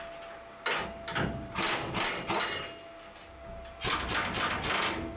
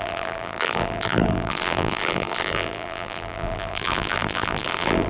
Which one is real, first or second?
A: first